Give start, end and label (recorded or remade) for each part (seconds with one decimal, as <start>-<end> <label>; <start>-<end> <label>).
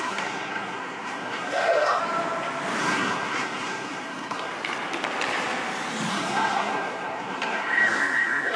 0.0-2.0 remade; 2.0-2.8 recorded; 2.8-4.5 remade; 4.5-6.1 recorded; 6.1-8.6 remade